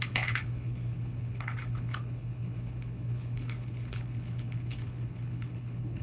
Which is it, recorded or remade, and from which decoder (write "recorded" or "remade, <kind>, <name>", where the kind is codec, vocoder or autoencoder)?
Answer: remade, codec, HILCodec